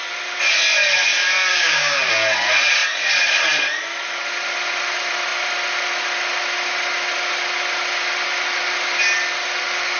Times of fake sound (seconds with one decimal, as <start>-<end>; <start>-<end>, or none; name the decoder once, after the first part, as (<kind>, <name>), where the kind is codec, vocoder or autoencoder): 1.5-2.1 (codec, DAC)